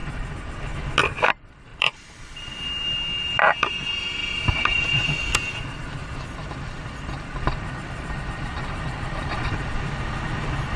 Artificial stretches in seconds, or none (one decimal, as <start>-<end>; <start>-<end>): 1.7-2.5; 8.5-9.4